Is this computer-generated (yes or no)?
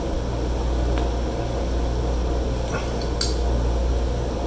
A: no